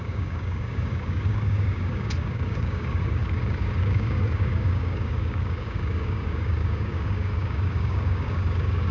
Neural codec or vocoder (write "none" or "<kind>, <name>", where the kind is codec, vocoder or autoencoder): codec, DAC